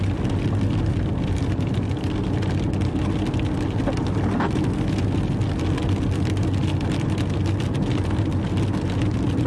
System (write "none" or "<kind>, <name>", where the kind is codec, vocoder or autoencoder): none